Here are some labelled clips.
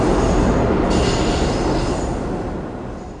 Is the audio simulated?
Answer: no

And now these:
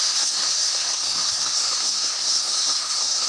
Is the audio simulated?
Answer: yes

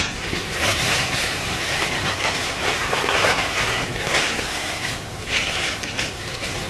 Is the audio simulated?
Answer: yes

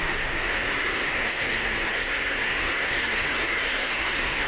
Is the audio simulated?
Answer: yes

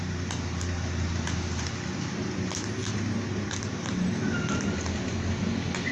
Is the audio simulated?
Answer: no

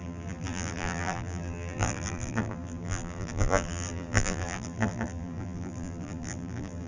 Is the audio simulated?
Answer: yes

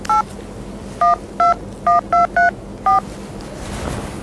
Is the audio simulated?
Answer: no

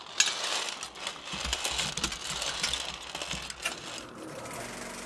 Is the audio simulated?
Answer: no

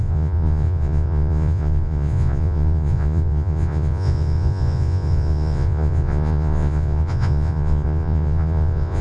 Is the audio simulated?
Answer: yes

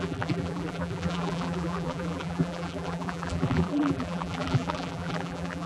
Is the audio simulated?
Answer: yes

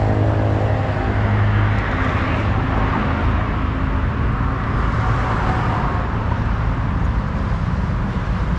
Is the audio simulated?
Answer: no